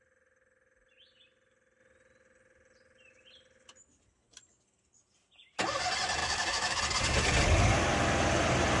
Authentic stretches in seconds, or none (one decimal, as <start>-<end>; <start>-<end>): 0.0-6.2; 6.8-8.8